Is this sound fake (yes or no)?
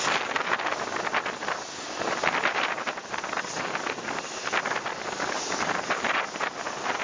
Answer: no